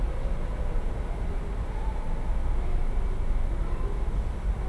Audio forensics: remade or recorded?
recorded